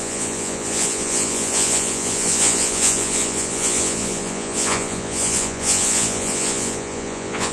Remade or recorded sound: remade